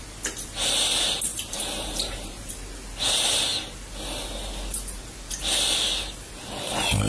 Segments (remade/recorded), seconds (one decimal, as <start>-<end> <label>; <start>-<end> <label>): 0.0-1.3 recorded; 1.3-2.5 remade; 2.5-7.1 recorded